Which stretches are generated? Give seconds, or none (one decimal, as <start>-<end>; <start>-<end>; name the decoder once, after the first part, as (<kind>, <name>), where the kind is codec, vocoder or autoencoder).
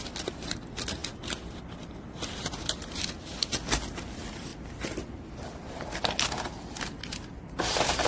none